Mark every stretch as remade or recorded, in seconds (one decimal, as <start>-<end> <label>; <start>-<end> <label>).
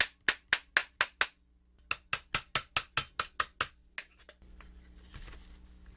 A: 0.0-6.0 recorded